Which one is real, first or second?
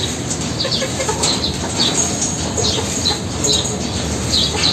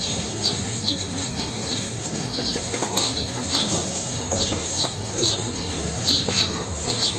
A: first